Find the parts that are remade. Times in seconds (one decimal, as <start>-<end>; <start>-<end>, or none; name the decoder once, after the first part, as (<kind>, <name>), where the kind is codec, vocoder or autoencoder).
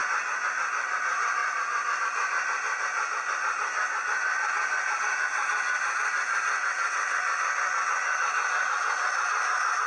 6.6-7.2 (vocoder, WaveNeXt)